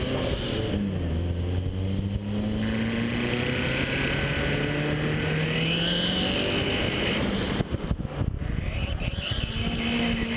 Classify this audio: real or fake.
real